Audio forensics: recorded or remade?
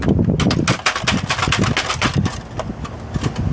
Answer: recorded